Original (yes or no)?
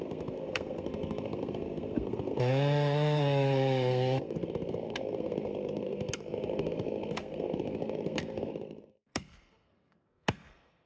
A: no